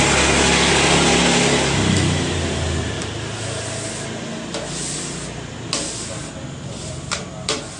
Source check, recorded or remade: recorded